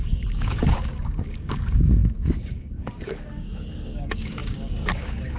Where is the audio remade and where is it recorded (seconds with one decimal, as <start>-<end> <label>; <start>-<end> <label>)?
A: 0.0-5.4 remade